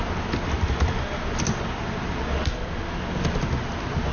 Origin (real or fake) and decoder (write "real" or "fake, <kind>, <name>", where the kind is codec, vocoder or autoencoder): real